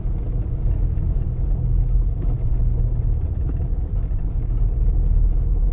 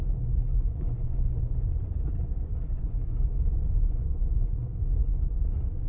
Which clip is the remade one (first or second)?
second